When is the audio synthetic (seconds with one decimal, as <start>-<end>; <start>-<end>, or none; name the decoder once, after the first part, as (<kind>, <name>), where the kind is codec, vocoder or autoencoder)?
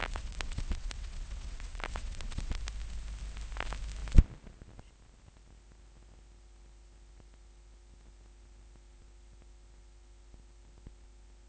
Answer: 0.0-2.6 (vocoder, WaveNeXt)